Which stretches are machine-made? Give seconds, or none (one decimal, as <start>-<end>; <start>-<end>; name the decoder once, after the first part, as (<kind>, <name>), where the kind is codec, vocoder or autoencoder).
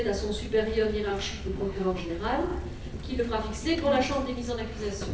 1.1-2.1 (codec, SNAC)